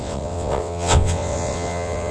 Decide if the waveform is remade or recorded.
remade